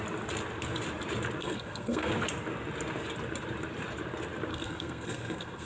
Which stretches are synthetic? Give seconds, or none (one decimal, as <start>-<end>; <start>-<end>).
1.4-2.1; 4.5-5.7